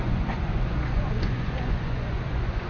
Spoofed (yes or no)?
yes